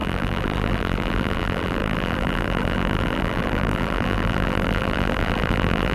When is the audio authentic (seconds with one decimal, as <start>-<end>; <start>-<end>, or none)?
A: none